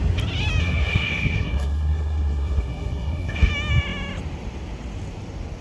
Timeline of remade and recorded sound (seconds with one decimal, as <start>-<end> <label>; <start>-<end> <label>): 0.0-0.6 recorded; 0.6-3.5 remade; 3.5-5.6 recorded